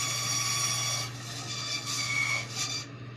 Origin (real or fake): real